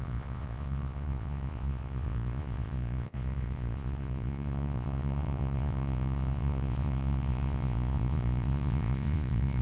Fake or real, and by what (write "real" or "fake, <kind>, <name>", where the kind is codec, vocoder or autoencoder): fake, vocoder, Vocos